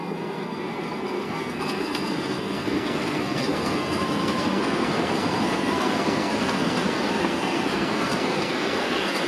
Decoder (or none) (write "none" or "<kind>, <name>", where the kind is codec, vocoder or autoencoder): codec, SNAC